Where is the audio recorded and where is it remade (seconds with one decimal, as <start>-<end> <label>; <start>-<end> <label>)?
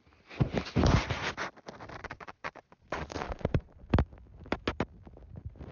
0.0-2.0 recorded; 2.0-3.9 remade; 3.9-5.7 recorded